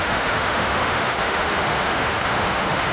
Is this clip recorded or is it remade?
remade